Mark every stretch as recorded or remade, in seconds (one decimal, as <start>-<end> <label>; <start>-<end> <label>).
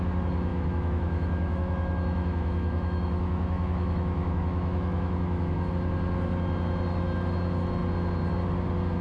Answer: 0.0-0.5 recorded; 0.5-5.7 remade; 5.7-9.0 recorded